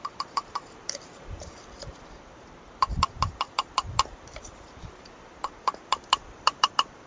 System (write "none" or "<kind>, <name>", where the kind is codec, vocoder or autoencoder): vocoder, BigVGAN v2